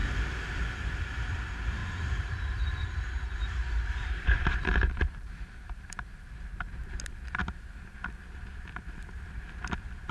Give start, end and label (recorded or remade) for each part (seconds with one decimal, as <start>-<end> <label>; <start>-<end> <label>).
0.0-1.8 recorded; 1.8-7.0 remade; 7.0-10.1 recorded